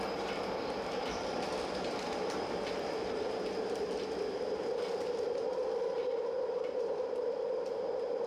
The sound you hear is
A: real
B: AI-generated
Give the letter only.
B